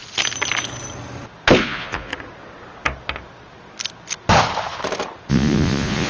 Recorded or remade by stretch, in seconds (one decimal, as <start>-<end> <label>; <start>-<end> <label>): 0.0-1.6 recorded; 1.6-2.1 remade; 2.1-5.3 recorded; 5.3-6.1 remade